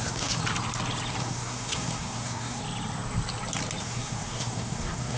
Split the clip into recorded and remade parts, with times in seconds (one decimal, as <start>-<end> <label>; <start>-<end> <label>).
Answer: 0.0-0.4 remade; 0.4-1.2 recorded; 1.2-2.6 remade; 2.6-3.8 recorded; 3.8-5.2 remade